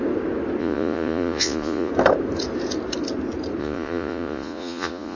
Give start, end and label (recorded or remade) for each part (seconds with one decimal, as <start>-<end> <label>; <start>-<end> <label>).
0.0-0.6 recorded; 0.6-1.9 remade; 1.9-3.6 recorded; 3.6-5.2 remade